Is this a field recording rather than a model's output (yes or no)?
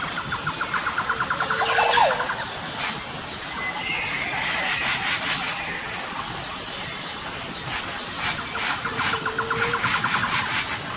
yes